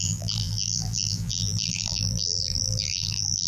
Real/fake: fake